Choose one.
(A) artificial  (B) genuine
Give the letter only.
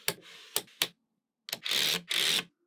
B